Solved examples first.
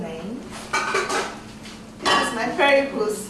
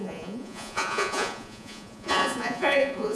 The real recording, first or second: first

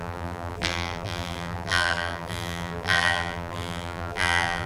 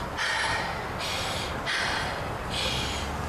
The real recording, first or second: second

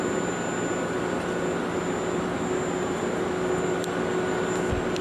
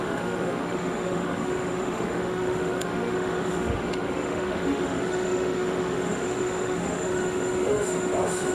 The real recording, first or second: first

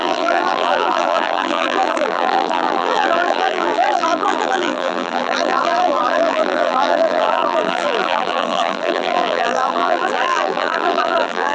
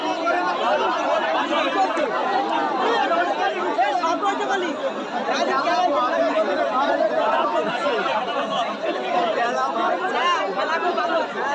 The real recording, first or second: second